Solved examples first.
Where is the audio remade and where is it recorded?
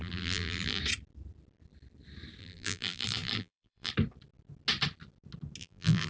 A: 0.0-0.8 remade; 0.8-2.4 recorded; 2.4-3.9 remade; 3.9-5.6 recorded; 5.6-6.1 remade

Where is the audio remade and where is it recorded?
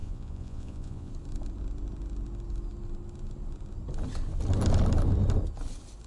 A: 0.0-1.1 remade; 1.1-6.1 recorded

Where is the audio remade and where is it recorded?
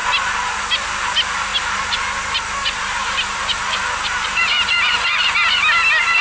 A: 0.0-1.5 recorded; 1.5-5.2 remade; 5.2-6.2 recorded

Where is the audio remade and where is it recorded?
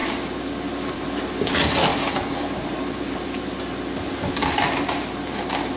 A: 0.0-5.8 recorded